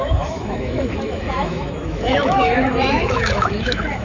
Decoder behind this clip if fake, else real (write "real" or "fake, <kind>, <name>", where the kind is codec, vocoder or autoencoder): fake, autoencoder, DAC-VAE